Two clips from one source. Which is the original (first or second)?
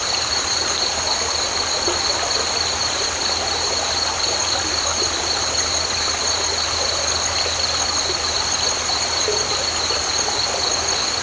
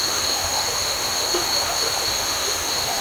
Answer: first